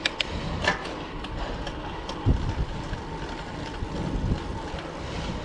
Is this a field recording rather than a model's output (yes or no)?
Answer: yes